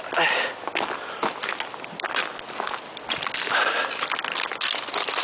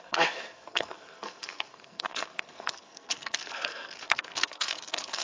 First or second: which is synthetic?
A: second